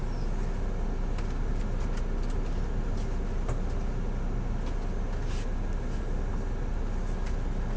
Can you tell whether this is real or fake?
real